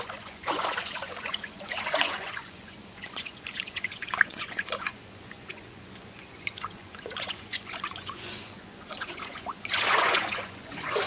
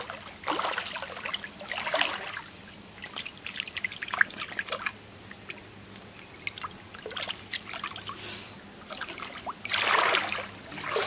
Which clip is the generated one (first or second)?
first